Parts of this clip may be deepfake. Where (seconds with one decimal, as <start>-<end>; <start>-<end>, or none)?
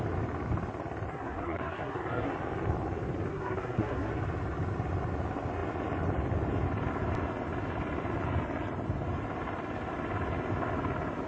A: 1.1-2.3; 3.3-4.1